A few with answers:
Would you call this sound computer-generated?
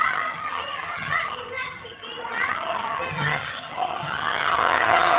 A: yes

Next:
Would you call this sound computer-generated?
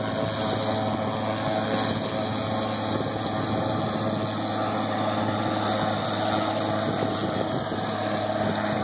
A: no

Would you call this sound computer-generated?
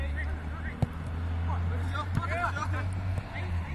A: no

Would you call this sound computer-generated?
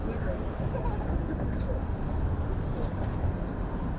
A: yes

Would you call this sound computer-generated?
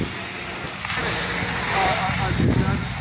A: no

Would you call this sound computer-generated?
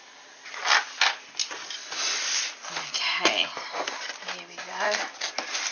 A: no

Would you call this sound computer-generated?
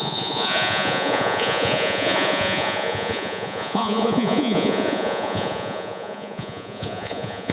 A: yes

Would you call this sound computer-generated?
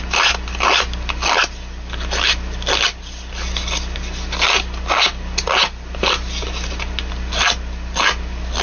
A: no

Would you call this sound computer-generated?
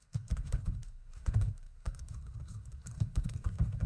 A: yes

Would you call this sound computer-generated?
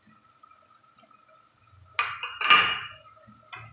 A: no